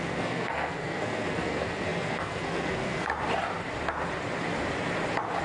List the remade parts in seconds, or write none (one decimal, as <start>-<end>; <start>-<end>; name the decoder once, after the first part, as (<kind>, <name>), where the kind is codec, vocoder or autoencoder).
0.0-3.1 (codec, SNAC)